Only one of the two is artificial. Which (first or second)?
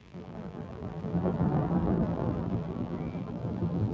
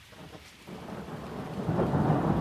first